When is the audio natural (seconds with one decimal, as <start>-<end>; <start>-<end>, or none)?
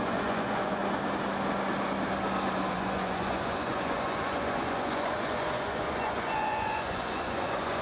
0.8-2.7